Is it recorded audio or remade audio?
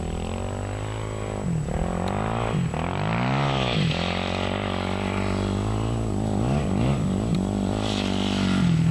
recorded